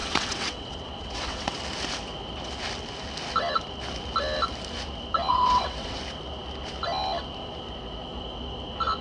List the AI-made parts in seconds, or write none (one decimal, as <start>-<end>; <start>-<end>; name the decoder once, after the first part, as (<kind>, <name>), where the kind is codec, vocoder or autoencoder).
0.0-1.6 (vocoder, WaveNeXt); 5.3-6.0